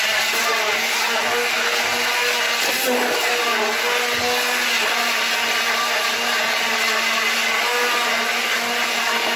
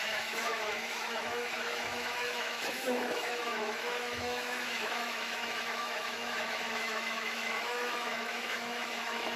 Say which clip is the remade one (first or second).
second